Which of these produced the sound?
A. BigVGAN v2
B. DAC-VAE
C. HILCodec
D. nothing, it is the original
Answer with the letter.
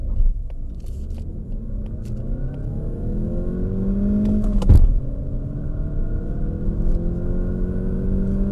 D